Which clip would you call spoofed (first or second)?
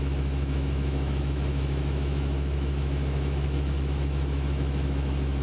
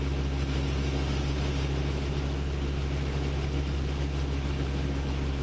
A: first